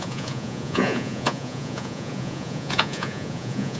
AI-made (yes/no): yes